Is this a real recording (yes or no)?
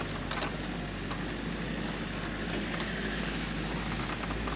yes